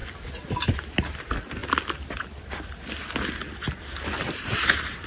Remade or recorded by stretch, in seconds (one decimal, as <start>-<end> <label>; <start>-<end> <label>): 0.0-5.1 recorded